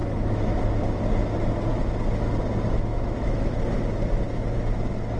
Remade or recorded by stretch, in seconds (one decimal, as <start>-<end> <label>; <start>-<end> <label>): 0.0-0.6 remade; 0.6-2.9 recorded; 2.9-3.6 remade; 3.6-5.2 recorded